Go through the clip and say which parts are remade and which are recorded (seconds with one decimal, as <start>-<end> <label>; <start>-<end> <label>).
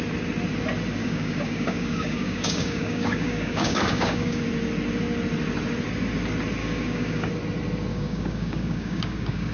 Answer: 0.0-1.0 recorded; 1.0-4.4 remade; 4.4-6.6 recorded; 6.6-7.3 remade; 7.3-7.9 recorded; 7.9-9.5 remade